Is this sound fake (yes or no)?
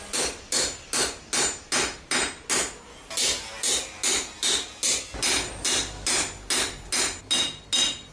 no